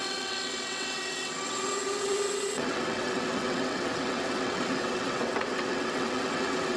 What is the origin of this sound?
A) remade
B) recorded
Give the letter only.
A